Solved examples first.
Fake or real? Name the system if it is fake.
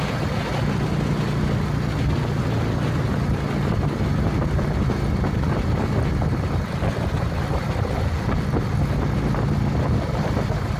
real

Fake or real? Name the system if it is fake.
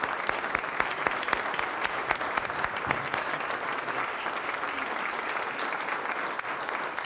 real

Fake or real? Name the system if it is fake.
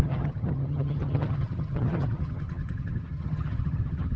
fake, vocoder, HiFi-GAN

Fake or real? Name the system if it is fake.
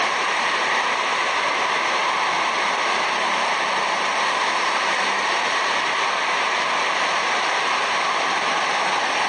fake, vocoder, BigVGAN v2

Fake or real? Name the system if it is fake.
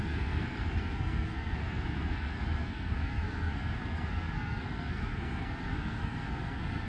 fake, codec, SNAC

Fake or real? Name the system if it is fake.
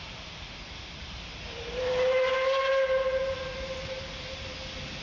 real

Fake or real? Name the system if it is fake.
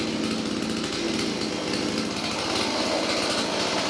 real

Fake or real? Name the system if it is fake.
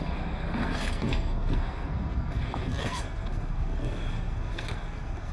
fake, codec, SNAC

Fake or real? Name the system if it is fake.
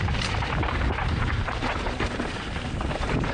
fake, vocoder, BigVGAN v2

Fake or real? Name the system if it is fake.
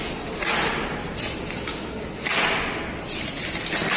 real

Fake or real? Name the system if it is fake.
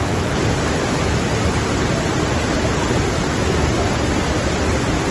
real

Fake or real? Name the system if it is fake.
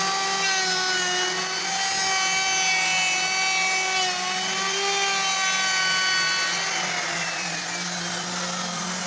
real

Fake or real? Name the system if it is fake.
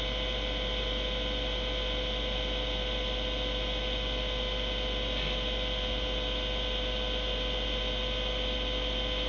real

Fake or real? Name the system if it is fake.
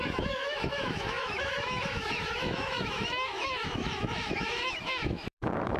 fake, autoencoder, DAC-VAE